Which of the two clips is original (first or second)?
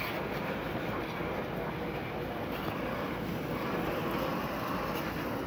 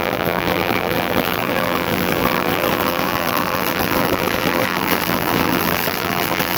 first